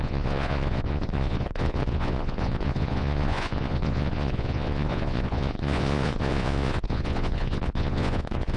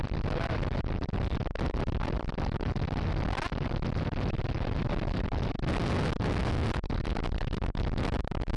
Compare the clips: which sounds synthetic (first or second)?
first